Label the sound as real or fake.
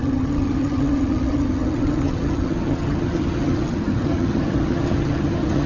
fake